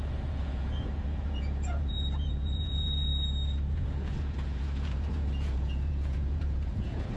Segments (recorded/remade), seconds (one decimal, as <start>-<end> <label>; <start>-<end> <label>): 0.0-3.1 remade; 3.1-3.7 recorded; 3.7-7.2 remade